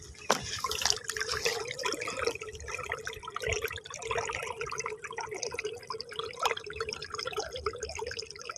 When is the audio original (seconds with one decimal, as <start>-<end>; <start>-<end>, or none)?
0.0-1.5; 2.7-8.6